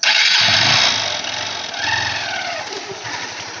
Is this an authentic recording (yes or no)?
yes